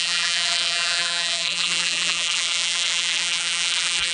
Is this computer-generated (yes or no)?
yes